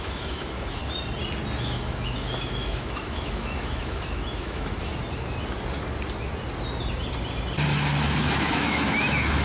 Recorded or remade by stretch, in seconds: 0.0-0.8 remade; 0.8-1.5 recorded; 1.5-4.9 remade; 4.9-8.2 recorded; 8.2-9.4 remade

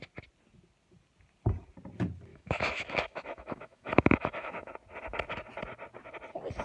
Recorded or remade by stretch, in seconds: 0.0-2.3 recorded; 2.3-4.7 remade; 4.7-6.6 recorded

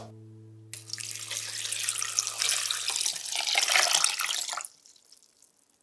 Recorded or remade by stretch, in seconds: 0.0-5.8 recorded

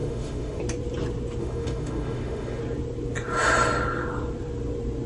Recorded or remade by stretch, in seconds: 0.0-0.6 remade; 0.6-1.4 recorded; 1.4-2.6 remade; 2.6-5.1 recorded

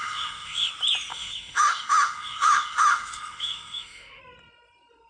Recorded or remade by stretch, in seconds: 0.0-0.7 remade; 0.7-1.1 recorded; 1.1-4.2 remade; 4.2-5.1 recorded

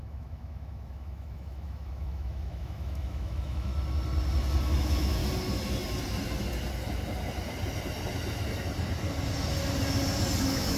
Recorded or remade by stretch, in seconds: 0.0-3.7 remade; 3.7-4.8 recorded; 4.8-5.2 remade; 5.2-10.4 recorded; 10.4-10.8 remade